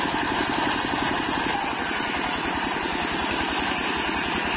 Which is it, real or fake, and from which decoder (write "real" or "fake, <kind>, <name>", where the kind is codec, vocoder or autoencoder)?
real